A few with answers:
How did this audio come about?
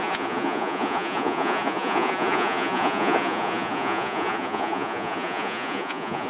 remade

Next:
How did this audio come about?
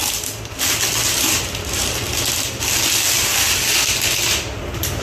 recorded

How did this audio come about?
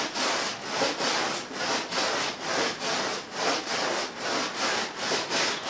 recorded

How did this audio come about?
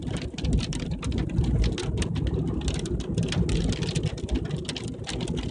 recorded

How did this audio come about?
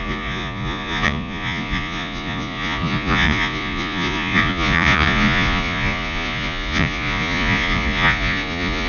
remade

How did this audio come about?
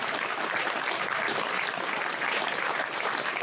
recorded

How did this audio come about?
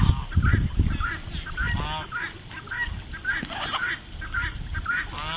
recorded